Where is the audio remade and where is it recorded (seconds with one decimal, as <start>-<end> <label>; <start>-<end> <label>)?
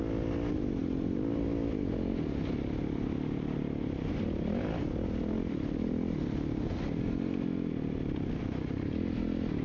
0.0-9.6 recorded